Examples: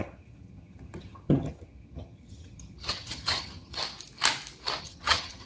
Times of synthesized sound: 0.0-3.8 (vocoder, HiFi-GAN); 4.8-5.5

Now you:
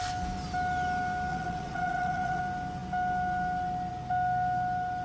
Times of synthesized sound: 1.3-2.4 (vocoder, WaveNeXt)

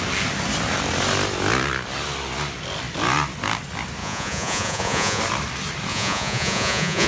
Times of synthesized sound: 4.0-5.2 (vocoder, Vocos); 5.9-7.1

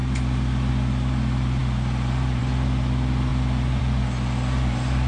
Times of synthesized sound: 0.0-0.7 (vocoder, BigVGAN v2); 3.3-3.8

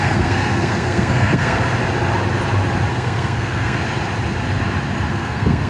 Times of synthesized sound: 0.0-1.6 (codec, SNAC); 2.9-3.8; 5.1-5.7

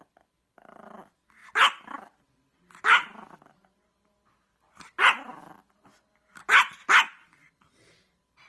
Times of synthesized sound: none